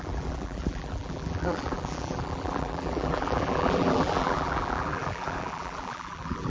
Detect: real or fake fake